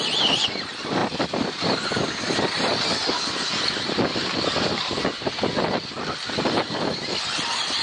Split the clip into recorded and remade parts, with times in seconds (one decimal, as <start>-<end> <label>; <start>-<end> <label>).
0.0-7.8 recorded